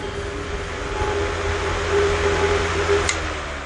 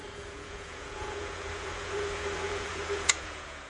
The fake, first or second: second